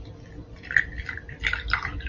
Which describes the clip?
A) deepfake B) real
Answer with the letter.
B